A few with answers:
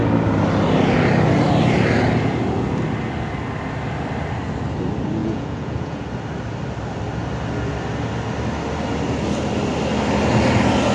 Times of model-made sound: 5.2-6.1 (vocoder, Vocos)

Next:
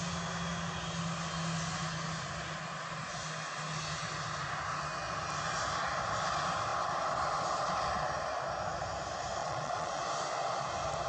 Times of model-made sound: 9.4-10.0 (vocoder, Vocos)

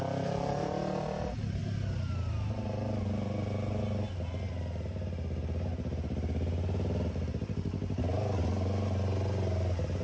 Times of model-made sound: none

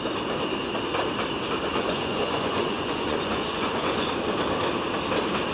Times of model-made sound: 1.7-4.1 (vocoder, Vocos)

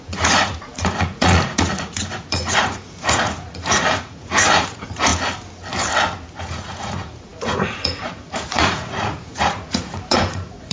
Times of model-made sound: 0.0-5.1 (vocoder, Vocos); 6.4-10.7